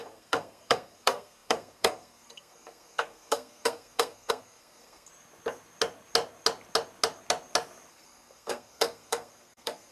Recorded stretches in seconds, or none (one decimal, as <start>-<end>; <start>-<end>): 5.1-7.9